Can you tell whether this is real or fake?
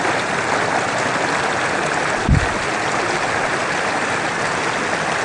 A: real